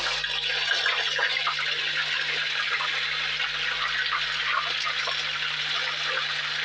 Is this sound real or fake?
real